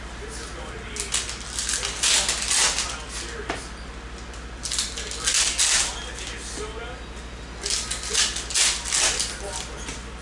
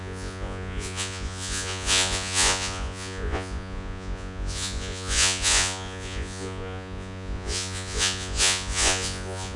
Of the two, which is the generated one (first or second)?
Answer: second